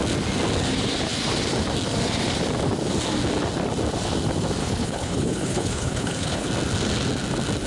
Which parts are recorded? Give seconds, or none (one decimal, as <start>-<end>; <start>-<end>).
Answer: 0.0-4.6; 6.5-7.7